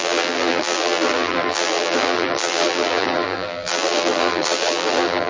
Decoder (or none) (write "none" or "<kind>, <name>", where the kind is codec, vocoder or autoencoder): vocoder, BigVGAN v2